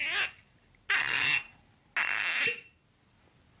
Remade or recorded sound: recorded